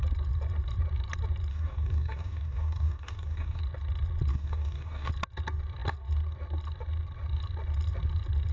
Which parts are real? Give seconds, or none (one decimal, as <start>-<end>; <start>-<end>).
0.0-1.5; 3.6-4.3; 5.1-8.5